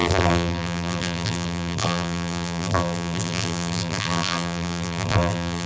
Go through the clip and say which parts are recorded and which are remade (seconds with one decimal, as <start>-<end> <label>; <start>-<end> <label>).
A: 0.0-5.7 remade